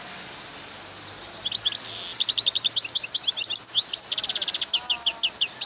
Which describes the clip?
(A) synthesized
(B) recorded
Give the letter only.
B